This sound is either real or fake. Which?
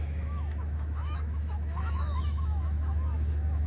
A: fake